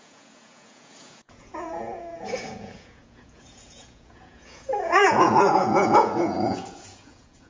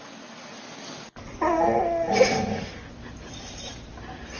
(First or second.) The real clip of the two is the second